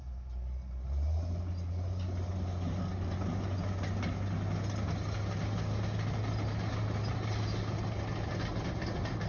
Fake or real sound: real